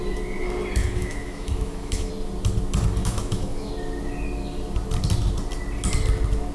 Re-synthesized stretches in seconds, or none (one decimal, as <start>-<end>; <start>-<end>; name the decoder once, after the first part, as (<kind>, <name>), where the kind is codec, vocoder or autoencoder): 0.8-2.1 (autoencoder, DAC-VAE); 3.0-3.7